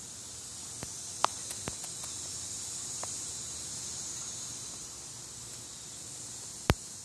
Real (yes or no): no